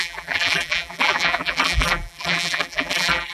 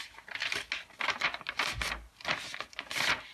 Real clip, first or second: second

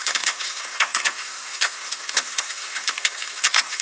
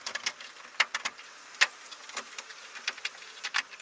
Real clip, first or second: second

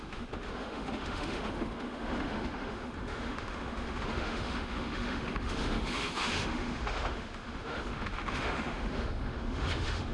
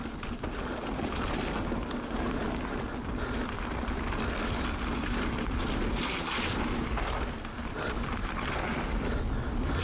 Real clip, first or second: second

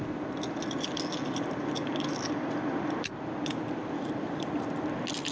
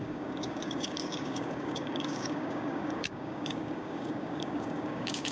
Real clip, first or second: first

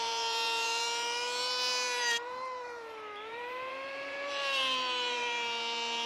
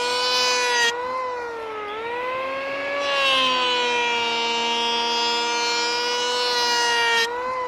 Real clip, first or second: second